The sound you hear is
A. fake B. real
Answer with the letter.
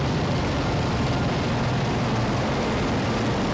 A